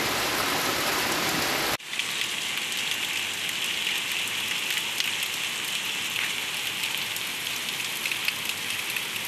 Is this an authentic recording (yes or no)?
yes